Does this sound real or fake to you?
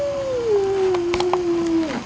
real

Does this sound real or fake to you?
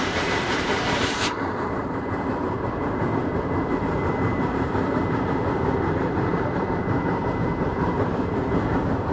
fake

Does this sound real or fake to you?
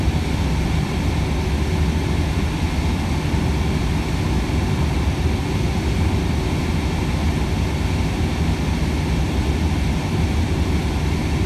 real